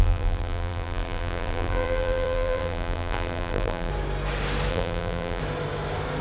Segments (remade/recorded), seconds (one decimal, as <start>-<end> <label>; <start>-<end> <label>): 0.0-3.9 remade; 3.9-4.7 recorded; 4.7-5.4 remade; 5.4-6.2 recorded